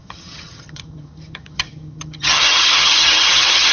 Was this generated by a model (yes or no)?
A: yes